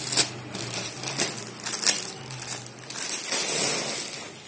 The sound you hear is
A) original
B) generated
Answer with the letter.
A